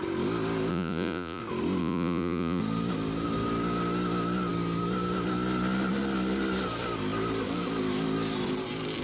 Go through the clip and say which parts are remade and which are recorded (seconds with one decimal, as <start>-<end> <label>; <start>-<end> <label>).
0.0-0.7 recorded; 0.7-1.4 remade; 1.4-1.8 recorded; 1.8-2.6 remade; 2.6-9.0 recorded